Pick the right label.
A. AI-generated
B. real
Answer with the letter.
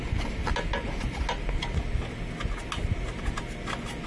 B